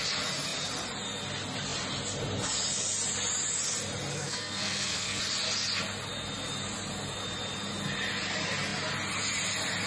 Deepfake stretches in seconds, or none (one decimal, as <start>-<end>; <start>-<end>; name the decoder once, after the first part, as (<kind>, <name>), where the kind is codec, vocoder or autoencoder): 4.1-5.2 (codec, SNAC)